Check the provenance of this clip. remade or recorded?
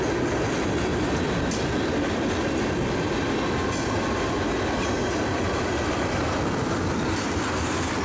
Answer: recorded